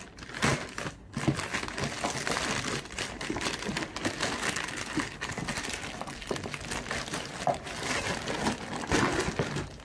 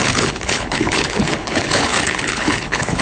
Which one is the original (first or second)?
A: first